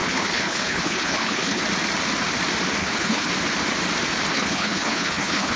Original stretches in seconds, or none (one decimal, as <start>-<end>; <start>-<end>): 1.6-2.8; 3.3-4.3

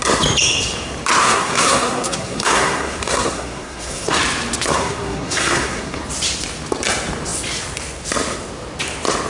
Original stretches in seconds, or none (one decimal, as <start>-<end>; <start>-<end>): 0.0-1.2; 4.2-4.7; 6.0-9.3

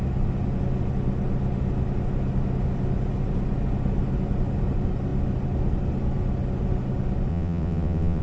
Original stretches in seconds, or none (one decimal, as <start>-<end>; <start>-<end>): 0.0-7.3

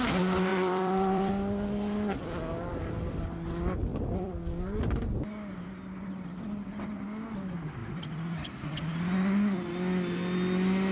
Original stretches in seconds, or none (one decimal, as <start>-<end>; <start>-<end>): 0.0-0.5; 1.3-3.9; 4.8-10.9

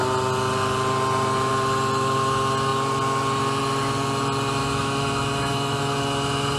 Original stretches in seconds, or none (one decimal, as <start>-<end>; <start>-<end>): 0.0-4.6; 5.8-6.6

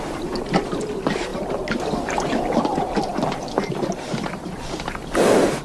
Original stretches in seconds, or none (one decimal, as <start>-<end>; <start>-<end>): 0.0-5.6

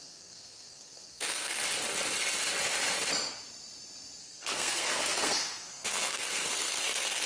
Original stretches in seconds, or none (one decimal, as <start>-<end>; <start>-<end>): 1.6-4.2